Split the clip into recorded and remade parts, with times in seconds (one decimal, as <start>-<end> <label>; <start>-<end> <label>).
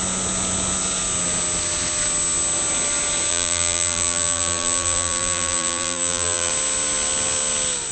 0.0-3.3 recorded; 3.3-6.5 remade; 6.5-7.9 recorded